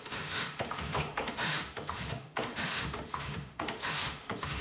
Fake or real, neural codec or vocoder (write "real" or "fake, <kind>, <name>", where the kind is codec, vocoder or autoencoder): fake, autoencoder, DAC-VAE